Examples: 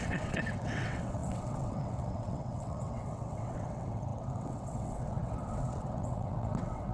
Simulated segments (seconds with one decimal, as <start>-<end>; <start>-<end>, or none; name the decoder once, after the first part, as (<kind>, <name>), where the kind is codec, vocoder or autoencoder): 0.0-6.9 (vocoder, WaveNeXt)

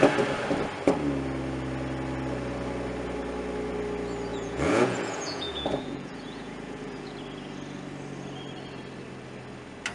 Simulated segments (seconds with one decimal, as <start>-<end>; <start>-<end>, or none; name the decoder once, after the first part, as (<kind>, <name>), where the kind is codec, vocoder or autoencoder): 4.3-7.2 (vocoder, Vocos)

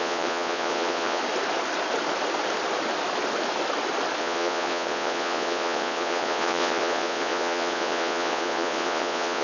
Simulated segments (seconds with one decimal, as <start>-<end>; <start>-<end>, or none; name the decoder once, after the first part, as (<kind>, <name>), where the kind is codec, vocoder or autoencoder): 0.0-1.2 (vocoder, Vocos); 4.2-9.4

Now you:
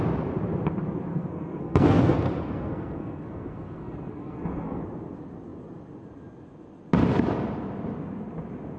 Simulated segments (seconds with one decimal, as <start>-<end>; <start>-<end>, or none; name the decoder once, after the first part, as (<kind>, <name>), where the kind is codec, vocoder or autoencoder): 1.1-4.8 (codec, SNAC)

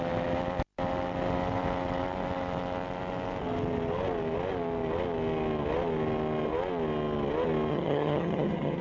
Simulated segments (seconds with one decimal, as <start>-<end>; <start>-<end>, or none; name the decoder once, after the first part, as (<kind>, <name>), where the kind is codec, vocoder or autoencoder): 7.7-8.8 (vocoder, HiFi-GAN)

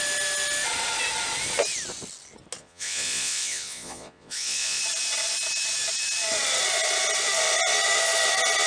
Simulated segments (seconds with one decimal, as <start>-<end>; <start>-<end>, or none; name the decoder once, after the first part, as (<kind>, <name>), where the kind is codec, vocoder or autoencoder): 2.6-4.8 (vocoder, Vocos)

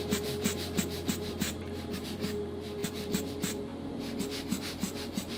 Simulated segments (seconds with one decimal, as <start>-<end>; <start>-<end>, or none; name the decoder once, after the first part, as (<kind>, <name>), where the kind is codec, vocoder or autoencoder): 0.0-3.7 (vocoder, BigVGAN v2); 4.2-5.4